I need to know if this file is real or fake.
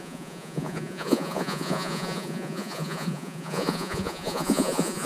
fake